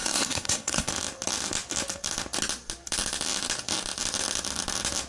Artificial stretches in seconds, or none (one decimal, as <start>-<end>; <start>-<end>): 0.0-0.9